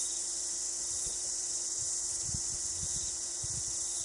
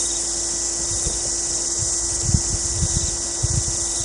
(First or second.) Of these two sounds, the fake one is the first